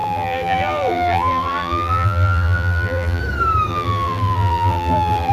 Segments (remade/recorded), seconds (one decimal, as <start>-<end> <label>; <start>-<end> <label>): 0.0-3.2 remade; 3.2-3.7 recorded; 3.7-5.3 remade